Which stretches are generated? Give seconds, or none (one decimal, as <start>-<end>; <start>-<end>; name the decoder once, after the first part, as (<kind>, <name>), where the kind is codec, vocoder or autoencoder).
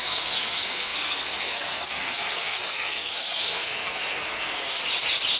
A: 0.0-4.8 (codec, SNAC)